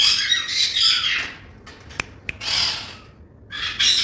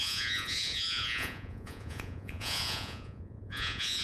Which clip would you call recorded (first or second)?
first